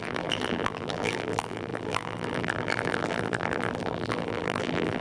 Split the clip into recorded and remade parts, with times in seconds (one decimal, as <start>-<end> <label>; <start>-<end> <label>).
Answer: 0.0-5.0 remade